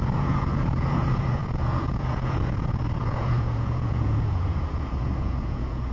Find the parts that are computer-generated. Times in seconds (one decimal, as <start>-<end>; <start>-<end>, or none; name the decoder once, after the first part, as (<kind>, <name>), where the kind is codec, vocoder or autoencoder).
0.0-5.9 (vocoder, Vocos)

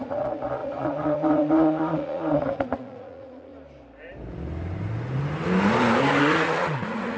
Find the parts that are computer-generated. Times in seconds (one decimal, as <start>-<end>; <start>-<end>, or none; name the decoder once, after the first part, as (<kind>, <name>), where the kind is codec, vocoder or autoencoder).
0.0-3.5 (vocoder, Vocos); 6.2-7.2

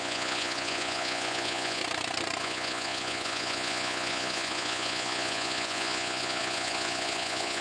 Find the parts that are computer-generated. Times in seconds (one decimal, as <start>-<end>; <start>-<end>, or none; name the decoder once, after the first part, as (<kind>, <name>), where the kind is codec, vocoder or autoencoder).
0.0-1.8 (vocoder, Vocos); 2.4-7.6

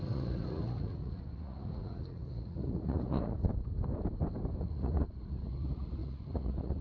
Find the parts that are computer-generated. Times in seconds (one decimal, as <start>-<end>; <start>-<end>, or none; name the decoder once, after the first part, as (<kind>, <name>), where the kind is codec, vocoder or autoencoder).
0.0-3.5 (vocoder, Vocos); 4.6-6.8

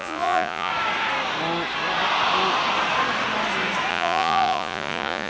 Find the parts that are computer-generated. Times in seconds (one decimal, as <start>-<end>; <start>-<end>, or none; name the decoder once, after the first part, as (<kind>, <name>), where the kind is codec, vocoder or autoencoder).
0.0-0.7 (vocoder, Vocos); 3.9-5.3

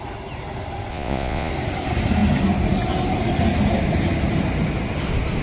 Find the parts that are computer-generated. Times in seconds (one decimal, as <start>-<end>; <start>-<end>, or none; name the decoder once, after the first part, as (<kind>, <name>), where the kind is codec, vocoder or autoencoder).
0.9-1.5 (vocoder, Vocos)

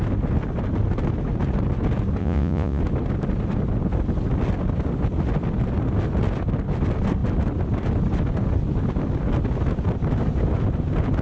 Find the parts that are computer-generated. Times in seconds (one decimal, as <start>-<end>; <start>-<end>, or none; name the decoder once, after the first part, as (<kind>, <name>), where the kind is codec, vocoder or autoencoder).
2.2-2.8 (vocoder, Vocos)

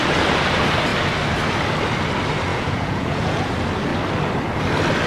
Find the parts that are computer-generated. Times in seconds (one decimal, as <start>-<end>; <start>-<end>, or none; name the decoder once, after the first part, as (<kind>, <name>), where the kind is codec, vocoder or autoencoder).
2.5-3.5 (vocoder, Vocos)